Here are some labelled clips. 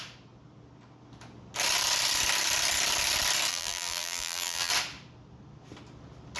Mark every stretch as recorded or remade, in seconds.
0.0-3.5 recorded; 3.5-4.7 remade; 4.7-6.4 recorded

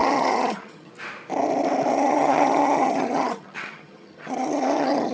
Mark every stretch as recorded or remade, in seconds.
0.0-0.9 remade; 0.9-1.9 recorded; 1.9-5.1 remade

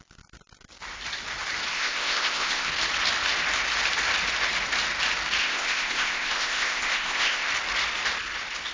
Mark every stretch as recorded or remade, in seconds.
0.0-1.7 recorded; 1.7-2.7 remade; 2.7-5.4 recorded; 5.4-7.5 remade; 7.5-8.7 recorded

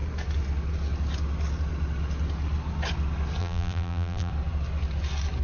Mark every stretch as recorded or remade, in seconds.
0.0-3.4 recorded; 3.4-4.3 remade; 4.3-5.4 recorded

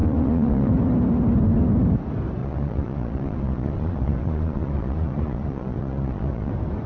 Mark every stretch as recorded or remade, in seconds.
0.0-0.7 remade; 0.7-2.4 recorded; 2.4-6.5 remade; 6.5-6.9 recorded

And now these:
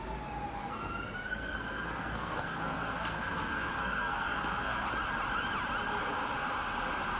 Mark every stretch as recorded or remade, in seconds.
0.0-0.6 recorded; 0.6-4.9 remade; 4.9-7.2 recorded

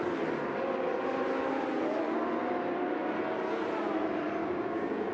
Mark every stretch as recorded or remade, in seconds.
0.0-4.4 recorded; 4.4-5.1 remade

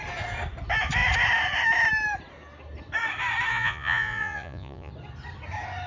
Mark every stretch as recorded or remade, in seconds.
0.0-3.5 recorded; 3.5-4.9 remade; 4.9-5.9 recorded